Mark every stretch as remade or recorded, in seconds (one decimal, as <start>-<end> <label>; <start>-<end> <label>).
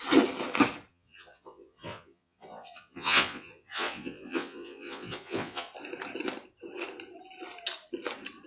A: 0.0-0.9 recorded; 0.9-5.7 remade; 5.7-8.5 recorded